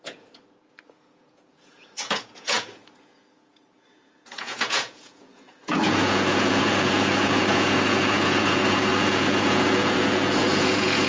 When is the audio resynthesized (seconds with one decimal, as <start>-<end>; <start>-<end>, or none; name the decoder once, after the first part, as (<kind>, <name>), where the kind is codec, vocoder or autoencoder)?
0.0-11.1 (vocoder, Vocos)